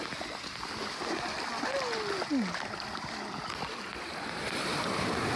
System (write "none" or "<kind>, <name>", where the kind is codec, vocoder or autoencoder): none